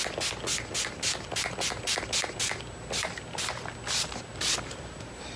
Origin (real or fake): real